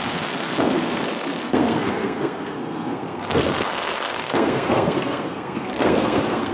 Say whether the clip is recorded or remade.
remade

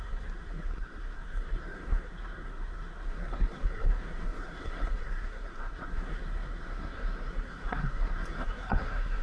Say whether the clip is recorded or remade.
remade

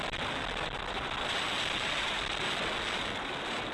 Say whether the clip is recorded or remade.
recorded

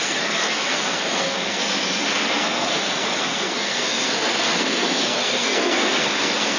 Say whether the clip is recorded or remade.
remade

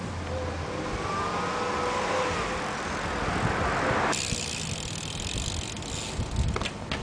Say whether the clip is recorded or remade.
recorded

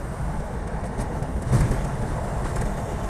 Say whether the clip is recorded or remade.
recorded